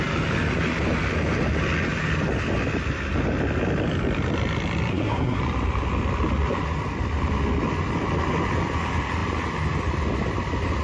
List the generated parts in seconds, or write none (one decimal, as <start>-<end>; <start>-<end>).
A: 4.9-5.4